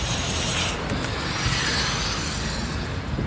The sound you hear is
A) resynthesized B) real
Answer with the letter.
B